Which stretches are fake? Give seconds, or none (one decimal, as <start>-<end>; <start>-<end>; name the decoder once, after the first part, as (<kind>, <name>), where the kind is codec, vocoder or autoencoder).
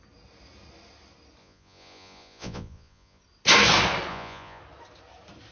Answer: 1.4-3.2 (vocoder, Vocos); 4.1-4.6